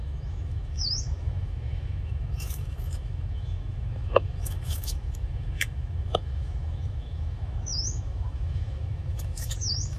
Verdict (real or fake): fake